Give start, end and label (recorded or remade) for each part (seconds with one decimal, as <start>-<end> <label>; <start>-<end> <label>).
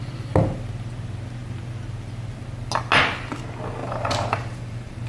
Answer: 0.0-3.8 recorded; 3.8-5.1 remade